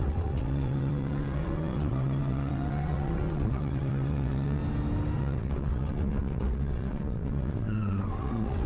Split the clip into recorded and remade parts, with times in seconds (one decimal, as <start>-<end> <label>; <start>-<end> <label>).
0.0-4.6 remade; 4.6-5.2 recorded; 5.2-8.7 remade